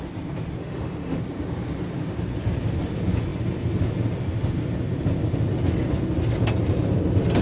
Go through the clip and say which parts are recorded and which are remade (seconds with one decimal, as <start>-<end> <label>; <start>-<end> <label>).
0.0-0.6 recorded; 0.6-1.2 remade; 1.2-7.4 recorded